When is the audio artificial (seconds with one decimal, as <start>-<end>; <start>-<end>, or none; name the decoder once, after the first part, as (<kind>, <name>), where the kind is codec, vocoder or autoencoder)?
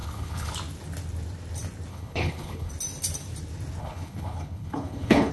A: 0.0-0.5 (codec, HILCodec); 1.9-2.7; 3.8-5.3